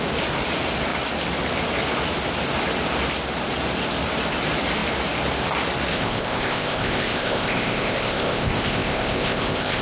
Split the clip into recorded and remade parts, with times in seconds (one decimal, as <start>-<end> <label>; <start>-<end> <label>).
0.0-5.9 recorded; 5.9-9.8 remade